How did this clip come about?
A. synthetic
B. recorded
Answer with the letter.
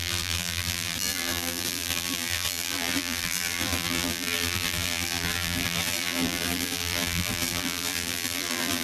A